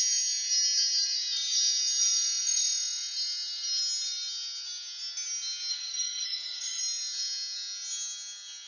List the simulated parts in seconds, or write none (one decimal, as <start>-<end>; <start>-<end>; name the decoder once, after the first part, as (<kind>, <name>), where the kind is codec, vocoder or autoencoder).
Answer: 5.7-6.8 (codec, DAC)